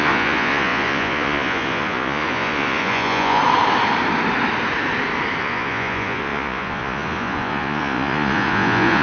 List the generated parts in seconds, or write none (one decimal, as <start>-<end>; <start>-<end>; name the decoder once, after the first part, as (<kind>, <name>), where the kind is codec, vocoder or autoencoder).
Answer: 0.0-3.4 (vocoder, Vocos); 5.4-9.0